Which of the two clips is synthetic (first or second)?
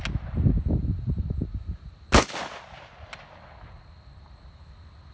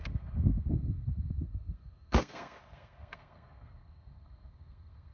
second